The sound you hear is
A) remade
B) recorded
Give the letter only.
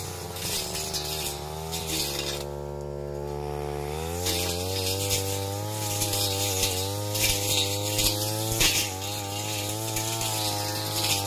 B